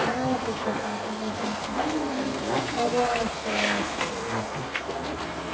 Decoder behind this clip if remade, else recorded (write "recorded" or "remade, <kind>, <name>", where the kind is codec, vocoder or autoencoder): remade, codec, SNAC